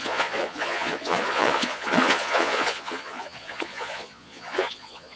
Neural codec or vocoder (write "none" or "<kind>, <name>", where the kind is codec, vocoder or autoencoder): vocoder, Vocos